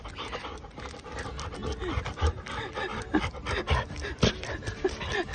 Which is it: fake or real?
fake